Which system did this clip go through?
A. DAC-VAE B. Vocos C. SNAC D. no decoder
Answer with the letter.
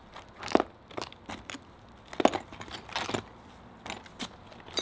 D